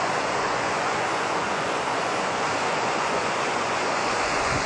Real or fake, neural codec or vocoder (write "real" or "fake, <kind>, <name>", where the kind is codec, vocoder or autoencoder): fake, vocoder, Vocos